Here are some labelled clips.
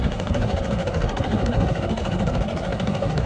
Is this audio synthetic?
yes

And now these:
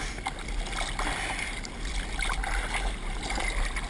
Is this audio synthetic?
no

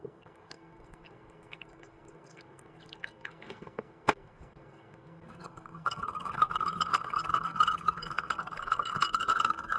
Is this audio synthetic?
yes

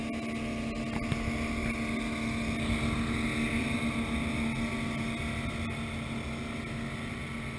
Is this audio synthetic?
no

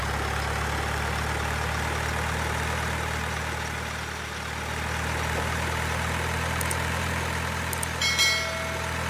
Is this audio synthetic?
no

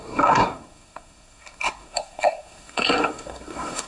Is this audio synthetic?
yes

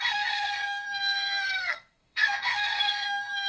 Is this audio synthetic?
yes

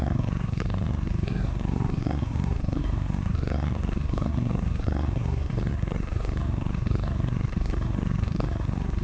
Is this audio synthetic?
yes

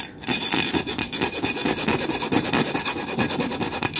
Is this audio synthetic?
no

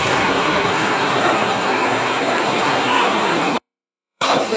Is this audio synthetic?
yes